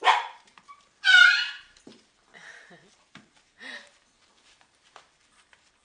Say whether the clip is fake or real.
fake